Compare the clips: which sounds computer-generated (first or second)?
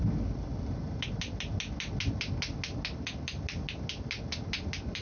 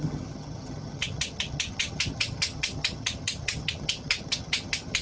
second